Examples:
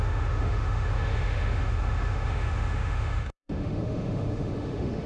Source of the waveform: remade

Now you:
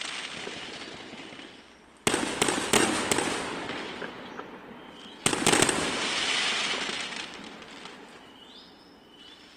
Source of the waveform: recorded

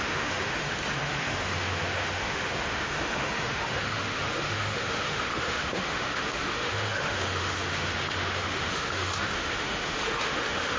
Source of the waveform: remade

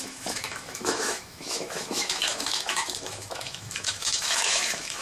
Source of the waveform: remade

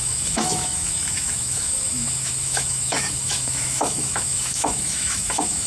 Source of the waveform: remade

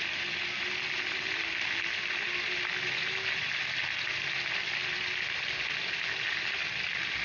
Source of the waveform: recorded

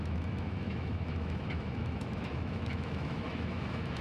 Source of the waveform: remade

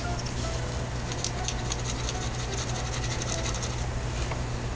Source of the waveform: recorded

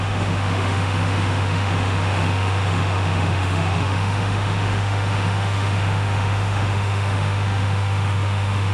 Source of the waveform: remade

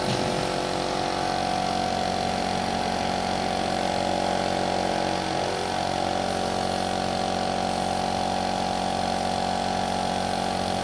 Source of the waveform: recorded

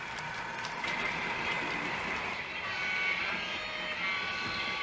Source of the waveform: recorded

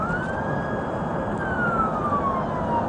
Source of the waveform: recorded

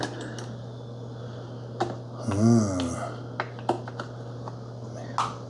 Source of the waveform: recorded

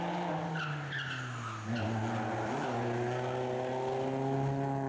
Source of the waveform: recorded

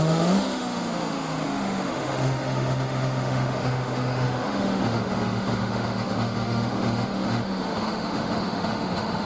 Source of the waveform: remade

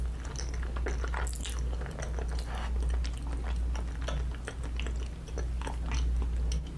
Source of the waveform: recorded